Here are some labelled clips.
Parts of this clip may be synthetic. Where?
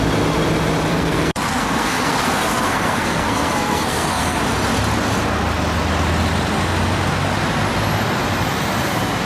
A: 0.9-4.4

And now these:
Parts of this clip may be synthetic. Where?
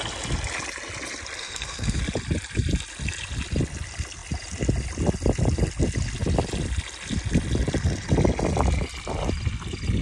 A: 1.4-2.0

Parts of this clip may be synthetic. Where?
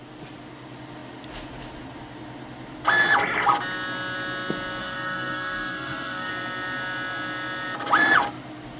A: 4.8-6.3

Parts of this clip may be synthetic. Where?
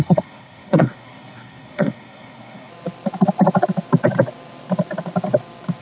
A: 0.0-2.7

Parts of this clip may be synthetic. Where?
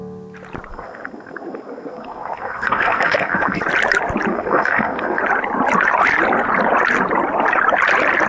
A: 0.7-3.6; 4.3-5.2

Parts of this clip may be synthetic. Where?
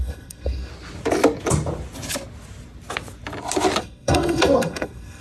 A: 0.0-0.7; 3.8-5.2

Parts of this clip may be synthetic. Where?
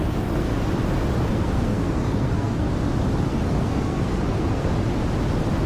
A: 0.0-0.5; 1.3-2.7; 3.3-4.7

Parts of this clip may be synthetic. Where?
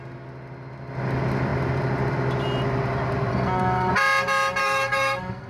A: 3.3-3.9; 4.6-5.5